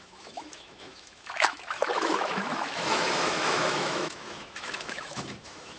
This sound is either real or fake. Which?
fake